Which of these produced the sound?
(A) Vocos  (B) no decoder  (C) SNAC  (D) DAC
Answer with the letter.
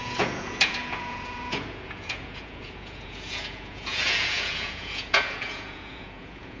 A